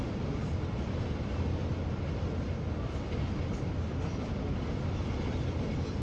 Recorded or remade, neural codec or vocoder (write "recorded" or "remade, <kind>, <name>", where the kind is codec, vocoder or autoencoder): recorded